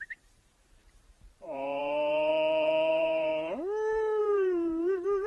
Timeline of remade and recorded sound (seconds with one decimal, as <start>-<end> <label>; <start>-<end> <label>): 0.0-2.3 remade; 2.3-2.9 recorded; 2.9-3.3 remade; 3.3-4.2 recorded; 4.2-5.3 remade